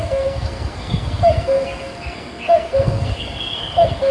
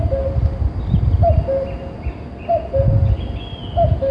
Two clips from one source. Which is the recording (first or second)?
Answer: second